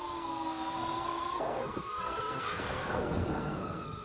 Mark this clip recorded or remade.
remade